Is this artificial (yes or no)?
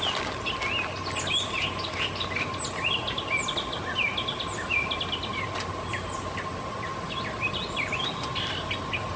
no